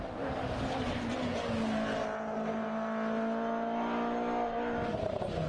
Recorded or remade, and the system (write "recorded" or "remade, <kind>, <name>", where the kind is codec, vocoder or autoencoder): recorded